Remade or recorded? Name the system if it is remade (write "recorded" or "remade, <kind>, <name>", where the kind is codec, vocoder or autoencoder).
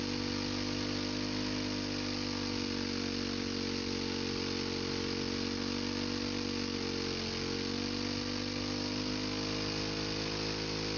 recorded